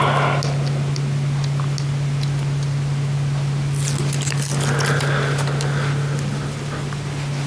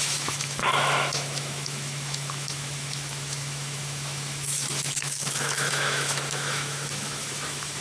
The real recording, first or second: first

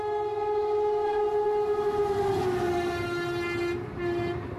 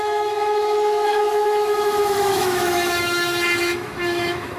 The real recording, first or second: first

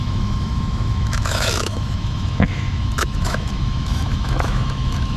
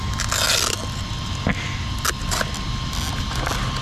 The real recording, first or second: second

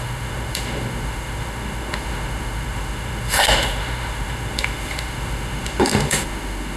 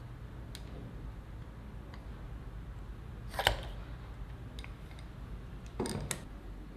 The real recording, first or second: second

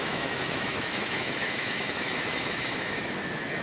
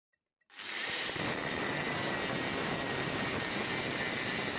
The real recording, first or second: second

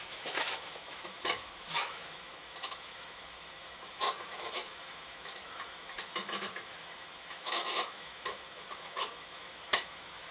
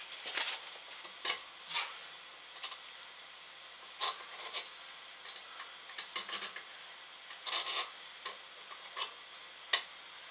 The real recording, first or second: second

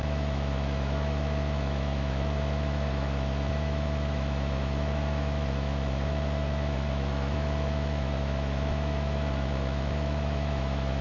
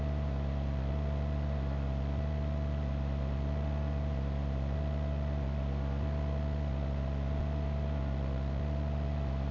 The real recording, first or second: second